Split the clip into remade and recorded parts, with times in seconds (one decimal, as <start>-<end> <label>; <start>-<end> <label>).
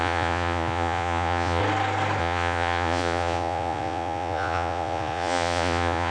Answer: 0.0-1.6 remade; 1.6-2.2 recorded; 2.2-6.1 remade